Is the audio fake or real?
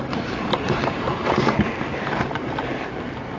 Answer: fake